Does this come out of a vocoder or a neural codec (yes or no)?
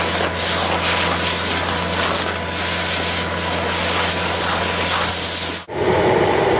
no